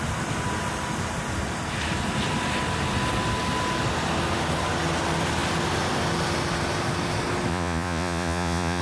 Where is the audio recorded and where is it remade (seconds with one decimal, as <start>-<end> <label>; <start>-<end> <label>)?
0.0-7.5 recorded; 7.5-8.8 remade